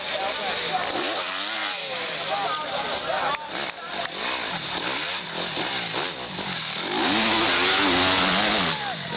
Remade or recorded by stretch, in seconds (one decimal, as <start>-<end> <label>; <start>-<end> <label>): 0.0-9.2 recorded